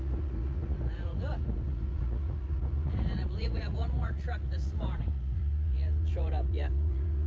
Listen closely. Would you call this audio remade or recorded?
remade